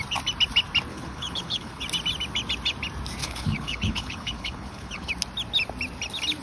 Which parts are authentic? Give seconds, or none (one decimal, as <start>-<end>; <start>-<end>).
0.0-0.9; 1.8-3.2; 5.1-6.4